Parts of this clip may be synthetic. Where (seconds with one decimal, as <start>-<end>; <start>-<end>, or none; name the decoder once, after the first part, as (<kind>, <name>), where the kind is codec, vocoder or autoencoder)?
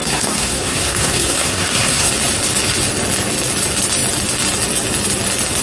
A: 0.0-2.1 (codec, SNAC)